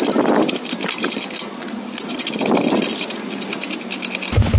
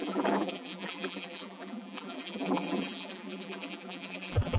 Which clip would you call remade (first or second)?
second